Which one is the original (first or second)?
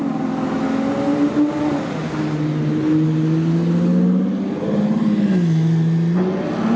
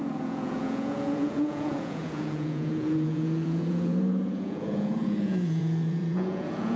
first